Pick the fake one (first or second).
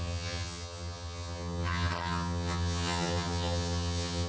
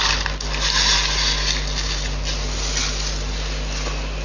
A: first